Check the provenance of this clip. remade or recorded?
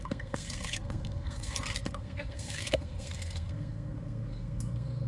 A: remade